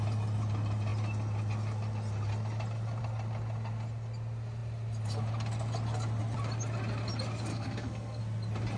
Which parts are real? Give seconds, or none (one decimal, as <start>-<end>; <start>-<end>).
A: 0.0-7.5; 8.2-8.8